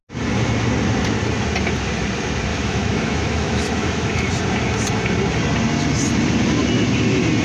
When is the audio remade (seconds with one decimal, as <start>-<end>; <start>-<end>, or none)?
2.5-4.3